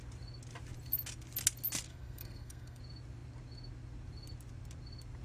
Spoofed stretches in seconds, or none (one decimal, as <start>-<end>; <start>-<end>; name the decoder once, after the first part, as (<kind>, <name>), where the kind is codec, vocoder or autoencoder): 1.9-2.8 (codec, SNAC)